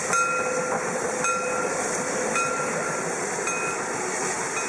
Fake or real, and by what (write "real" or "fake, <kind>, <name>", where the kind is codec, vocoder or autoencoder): real